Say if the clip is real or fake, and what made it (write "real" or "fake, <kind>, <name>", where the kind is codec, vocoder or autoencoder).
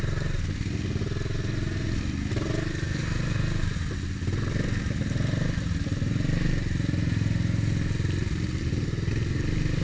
real